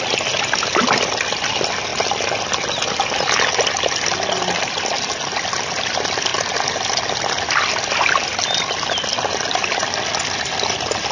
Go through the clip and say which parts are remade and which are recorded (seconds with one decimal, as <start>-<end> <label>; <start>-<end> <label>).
0.0-11.1 recorded